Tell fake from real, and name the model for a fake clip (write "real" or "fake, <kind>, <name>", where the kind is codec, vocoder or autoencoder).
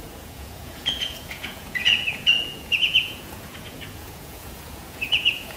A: fake, vocoder, Vocos